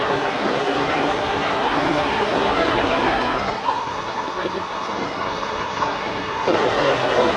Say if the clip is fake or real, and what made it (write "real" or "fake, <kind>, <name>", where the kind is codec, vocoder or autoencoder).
fake, codec, SNAC